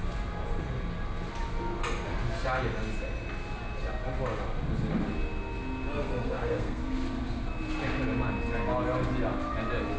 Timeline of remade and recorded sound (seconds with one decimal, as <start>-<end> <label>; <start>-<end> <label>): 0.0-5.9 recorded; 5.9-6.8 remade; 6.8-10.0 recorded